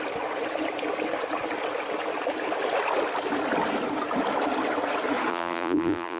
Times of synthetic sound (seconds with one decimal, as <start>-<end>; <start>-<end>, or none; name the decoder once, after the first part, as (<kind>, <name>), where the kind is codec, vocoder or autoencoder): 5.3-6.2 (vocoder, BigVGAN v2)